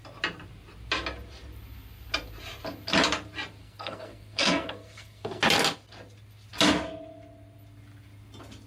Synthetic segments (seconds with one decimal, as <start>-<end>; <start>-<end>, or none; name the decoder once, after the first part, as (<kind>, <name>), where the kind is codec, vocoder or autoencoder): 3.6-5.4 (codec, SNAC)